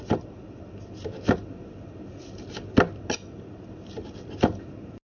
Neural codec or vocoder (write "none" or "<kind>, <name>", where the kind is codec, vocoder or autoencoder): none